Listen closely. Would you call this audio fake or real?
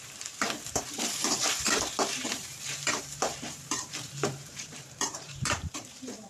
fake